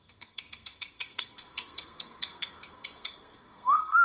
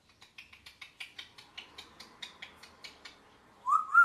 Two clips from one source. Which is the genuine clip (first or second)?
second